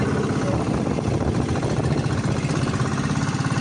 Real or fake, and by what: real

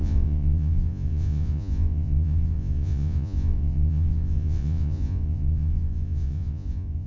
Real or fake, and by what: fake, vocoder, Vocos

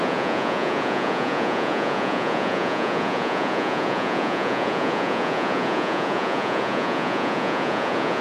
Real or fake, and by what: fake, vocoder, Vocos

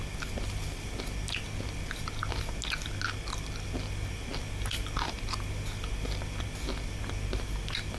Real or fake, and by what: real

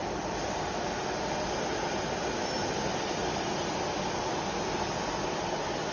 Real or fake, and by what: real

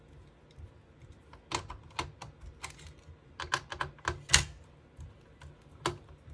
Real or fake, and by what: real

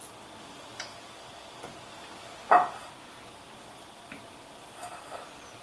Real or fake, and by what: real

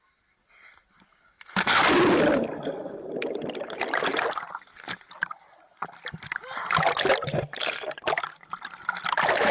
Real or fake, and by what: real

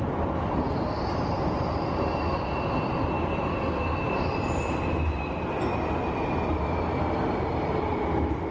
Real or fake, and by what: real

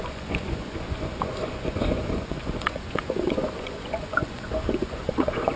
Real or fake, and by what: fake, vocoder, Vocos